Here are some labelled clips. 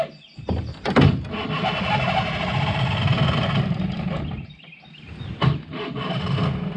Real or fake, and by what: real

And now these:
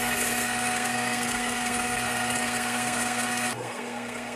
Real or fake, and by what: fake, codec, SNAC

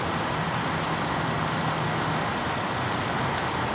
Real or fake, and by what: real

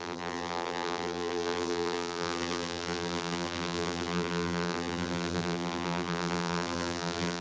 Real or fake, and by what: fake, vocoder, BigVGAN v2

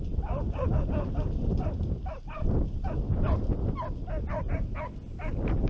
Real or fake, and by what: real